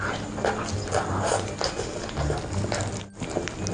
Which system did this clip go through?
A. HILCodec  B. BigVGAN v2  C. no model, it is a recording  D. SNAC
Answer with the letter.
C